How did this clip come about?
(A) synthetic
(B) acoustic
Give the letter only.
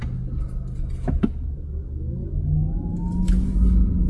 B